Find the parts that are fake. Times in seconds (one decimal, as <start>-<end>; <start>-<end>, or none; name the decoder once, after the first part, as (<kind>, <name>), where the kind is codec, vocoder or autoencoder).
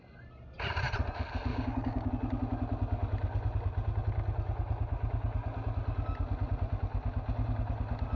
1.5-2.1 (codec, DAC)